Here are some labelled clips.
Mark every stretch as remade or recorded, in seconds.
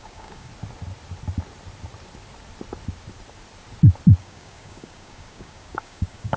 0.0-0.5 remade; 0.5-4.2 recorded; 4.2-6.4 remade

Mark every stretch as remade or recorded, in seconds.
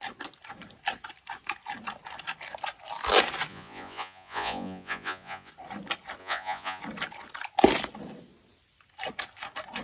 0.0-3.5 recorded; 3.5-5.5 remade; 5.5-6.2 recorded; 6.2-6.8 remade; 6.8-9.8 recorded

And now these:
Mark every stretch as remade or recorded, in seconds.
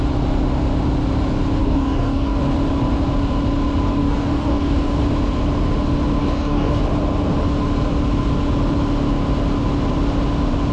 0.0-1.6 recorded; 1.6-2.4 remade; 2.4-3.9 recorded; 3.9-5.0 remade; 5.0-6.2 recorded; 6.2-6.8 remade; 6.8-10.7 recorded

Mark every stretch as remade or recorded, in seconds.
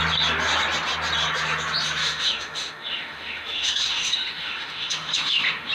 0.0-2.0 recorded; 2.0-5.7 remade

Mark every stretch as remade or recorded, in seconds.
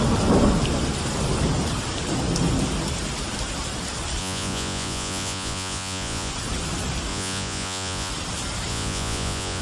0.0-4.2 recorded; 4.2-6.3 remade; 6.3-7.1 recorded; 7.1-8.1 remade; 8.1-8.7 recorded; 8.7-9.6 remade